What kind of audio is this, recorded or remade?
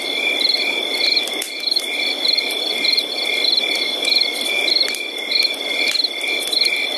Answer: recorded